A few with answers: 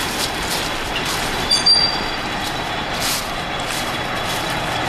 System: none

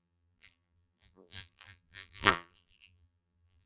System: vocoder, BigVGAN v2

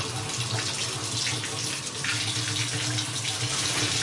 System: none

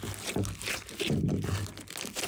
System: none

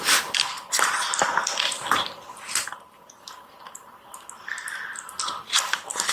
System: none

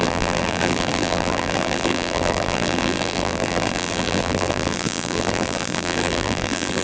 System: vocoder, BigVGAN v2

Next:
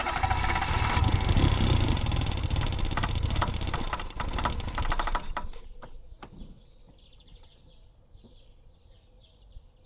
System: vocoder, BigVGAN v2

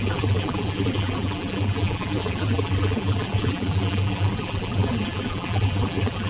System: vocoder, BigVGAN v2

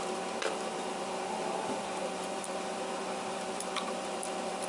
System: vocoder, BigVGAN v2